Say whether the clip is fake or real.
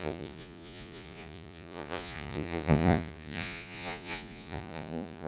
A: fake